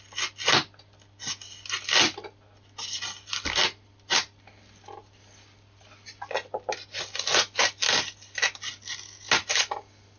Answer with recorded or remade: recorded